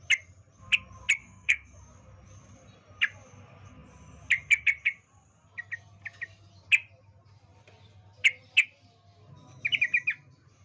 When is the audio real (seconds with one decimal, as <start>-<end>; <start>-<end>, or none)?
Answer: 0.0-1.2; 1.8-10.6